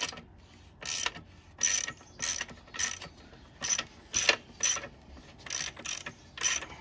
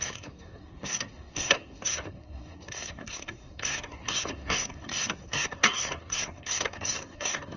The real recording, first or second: first